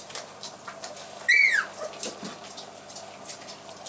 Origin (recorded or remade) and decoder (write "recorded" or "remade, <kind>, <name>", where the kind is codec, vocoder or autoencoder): recorded